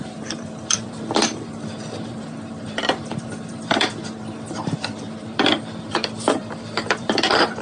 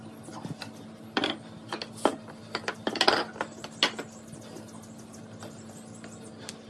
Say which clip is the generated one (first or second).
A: first